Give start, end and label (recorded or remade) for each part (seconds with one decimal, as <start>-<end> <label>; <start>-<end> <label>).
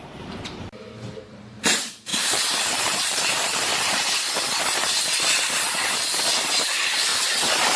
0.0-3.7 remade; 3.7-6.5 recorded; 6.5-7.1 remade; 7.1-7.8 recorded